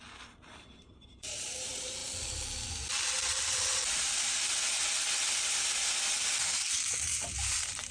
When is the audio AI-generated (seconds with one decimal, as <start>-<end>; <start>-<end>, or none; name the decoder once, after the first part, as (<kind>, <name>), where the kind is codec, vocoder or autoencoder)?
0.0-2.0 (vocoder, BigVGAN v2); 6.7-7.9